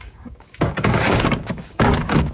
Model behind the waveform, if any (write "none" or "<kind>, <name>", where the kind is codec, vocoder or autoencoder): codec, DAC